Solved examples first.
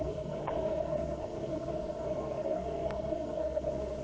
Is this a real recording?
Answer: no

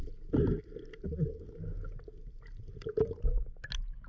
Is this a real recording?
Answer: yes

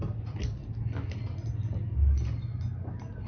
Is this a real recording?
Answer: yes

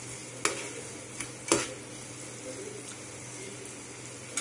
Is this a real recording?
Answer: yes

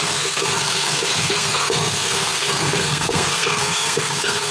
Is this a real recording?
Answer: no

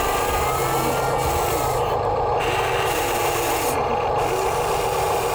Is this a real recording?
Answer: yes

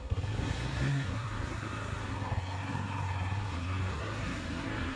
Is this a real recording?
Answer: no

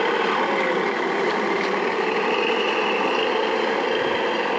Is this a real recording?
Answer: yes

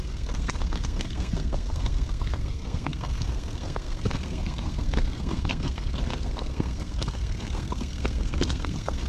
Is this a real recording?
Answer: no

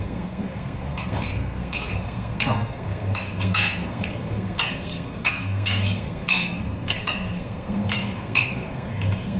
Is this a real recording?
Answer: no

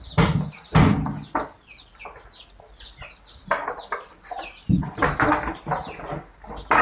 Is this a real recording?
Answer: yes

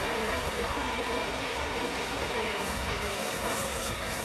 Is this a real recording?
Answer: no